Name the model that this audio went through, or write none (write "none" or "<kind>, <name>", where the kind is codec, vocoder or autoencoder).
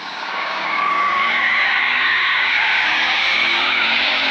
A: codec, DAC